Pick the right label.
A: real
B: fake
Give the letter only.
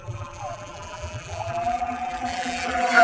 B